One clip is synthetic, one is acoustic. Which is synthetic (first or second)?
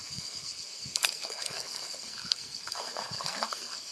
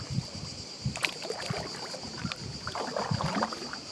first